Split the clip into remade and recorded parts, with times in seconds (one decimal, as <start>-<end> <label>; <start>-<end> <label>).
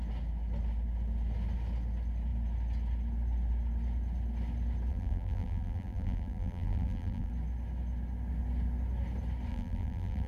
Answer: 0.0-4.9 recorded; 4.9-7.3 remade; 7.3-9.5 recorded; 9.5-10.3 remade